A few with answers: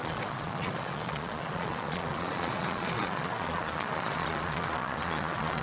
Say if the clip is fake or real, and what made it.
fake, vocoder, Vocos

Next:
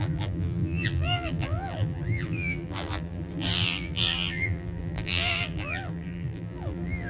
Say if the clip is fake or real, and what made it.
fake, vocoder, BigVGAN v2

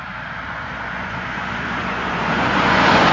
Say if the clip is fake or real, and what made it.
fake, vocoder, Vocos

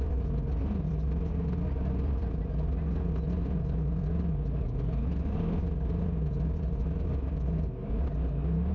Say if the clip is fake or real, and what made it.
real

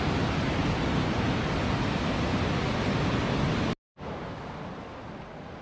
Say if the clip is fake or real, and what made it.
real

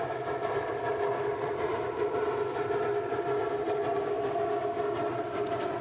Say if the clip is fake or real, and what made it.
real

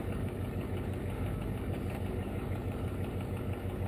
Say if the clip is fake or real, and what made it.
fake, codec, DAC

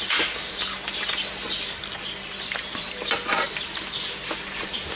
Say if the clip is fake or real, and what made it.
real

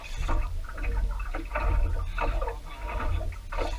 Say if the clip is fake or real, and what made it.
real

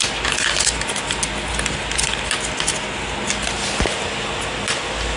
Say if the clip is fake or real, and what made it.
real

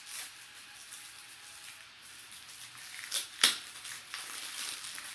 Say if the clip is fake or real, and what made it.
real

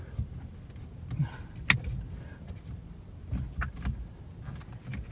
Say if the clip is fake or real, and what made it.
real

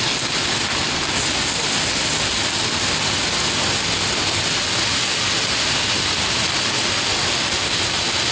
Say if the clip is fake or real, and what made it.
real